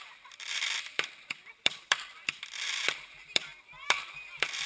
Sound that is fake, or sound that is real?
fake